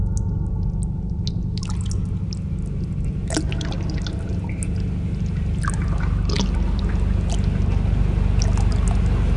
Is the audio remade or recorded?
recorded